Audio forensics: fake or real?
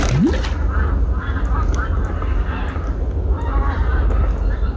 real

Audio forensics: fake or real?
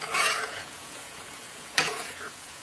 fake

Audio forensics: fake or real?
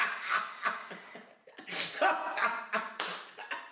real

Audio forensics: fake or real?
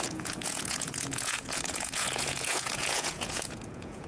fake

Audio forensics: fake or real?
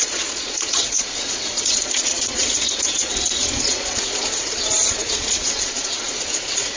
fake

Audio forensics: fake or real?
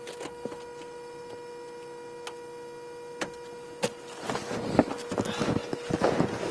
real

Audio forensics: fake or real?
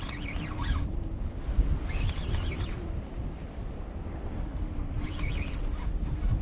real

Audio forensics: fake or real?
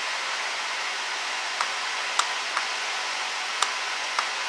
fake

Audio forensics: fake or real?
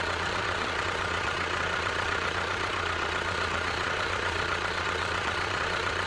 fake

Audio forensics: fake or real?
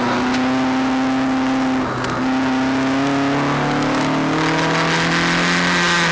real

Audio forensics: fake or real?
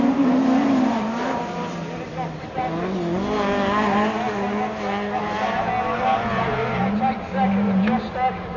real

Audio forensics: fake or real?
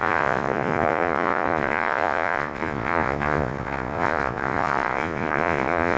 fake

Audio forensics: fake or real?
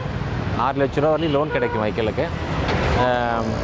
real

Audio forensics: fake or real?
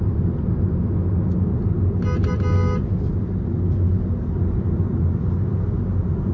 real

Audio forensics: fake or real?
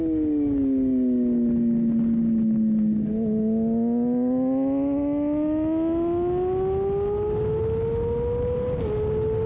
real